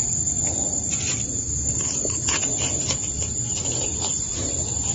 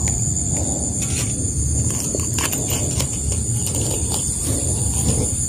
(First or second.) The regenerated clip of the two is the first